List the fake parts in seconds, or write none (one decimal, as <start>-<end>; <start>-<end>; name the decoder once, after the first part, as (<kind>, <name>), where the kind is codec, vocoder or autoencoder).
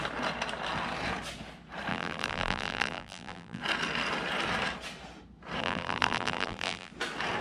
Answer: 1.9-3.6 (vocoder, BigVGAN v2); 5.6-6.9